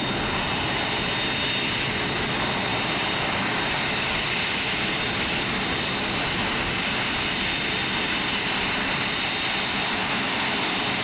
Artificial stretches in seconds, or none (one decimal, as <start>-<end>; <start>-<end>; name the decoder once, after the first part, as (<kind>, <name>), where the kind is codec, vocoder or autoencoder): 2.7-4.9 (vocoder, BigVGAN v2)